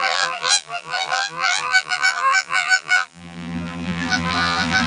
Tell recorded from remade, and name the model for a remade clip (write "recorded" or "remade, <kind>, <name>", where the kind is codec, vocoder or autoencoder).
remade, vocoder, BigVGAN v2